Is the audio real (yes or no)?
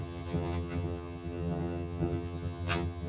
no